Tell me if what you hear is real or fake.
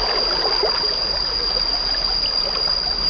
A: real